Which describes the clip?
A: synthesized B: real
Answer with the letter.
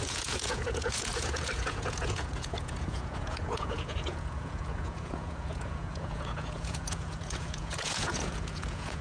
A